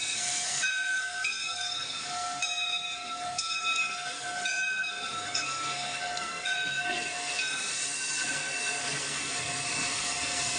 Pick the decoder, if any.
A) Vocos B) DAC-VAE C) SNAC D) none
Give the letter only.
C